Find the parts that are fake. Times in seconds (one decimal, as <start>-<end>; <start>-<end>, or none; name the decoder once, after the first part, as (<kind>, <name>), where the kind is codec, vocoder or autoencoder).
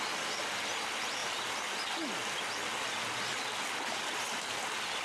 none